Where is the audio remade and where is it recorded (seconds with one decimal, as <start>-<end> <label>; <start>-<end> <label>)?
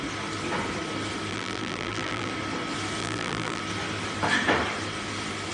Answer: 0.0-1.3 recorded; 1.3-2.3 remade; 2.3-3.0 recorded; 3.0-3.6 remade; 3.6-5.5 recorded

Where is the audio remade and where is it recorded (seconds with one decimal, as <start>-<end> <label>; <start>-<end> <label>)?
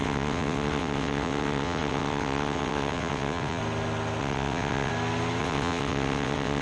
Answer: 0.0-3.6 remade; 3.6-4.2 recorded; 4.2-4.9 remade; 4.9-5.4 recorded; 5.4-6.6 remade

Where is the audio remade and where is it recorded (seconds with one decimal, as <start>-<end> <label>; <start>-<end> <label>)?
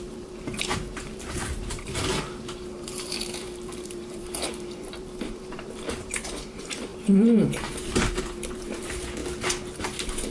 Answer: 0.0-9.2 remade; 9.2-10.3 recorded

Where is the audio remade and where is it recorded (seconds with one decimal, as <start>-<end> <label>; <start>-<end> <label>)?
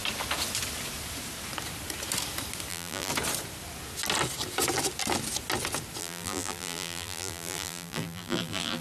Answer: 0.0-2.7 recorded; 2.7-3.1 remade; 3.1-6.0 recorded; 6.0-8.8 remade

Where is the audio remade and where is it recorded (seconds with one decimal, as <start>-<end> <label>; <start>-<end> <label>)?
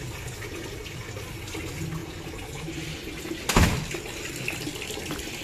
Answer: 0.0-5.4 recorded